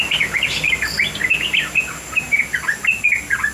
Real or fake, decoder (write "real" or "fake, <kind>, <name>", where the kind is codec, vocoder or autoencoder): real